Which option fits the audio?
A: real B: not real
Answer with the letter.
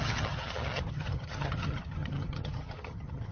B